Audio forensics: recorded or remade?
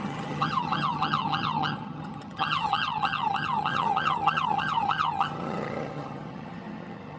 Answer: remade